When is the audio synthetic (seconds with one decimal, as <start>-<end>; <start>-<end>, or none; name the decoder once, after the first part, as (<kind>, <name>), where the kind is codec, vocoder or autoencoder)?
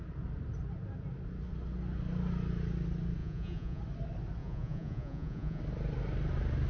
3.2-3.8 (vocoder, Vocos); 4.4-5.6